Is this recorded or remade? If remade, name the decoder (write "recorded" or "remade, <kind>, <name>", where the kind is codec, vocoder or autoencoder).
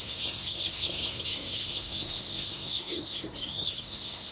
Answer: remade, codec, SNAC